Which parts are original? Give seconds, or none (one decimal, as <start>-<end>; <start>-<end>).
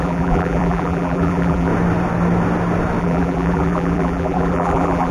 1.7-3.0